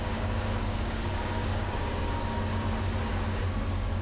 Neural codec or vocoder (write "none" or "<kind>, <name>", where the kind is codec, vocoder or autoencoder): codec, DAC